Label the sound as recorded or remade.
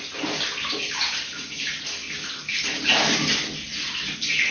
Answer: recorded